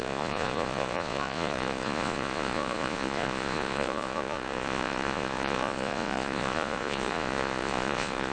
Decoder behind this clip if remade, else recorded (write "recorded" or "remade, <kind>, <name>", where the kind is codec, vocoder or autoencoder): remade, vocoder, Vocos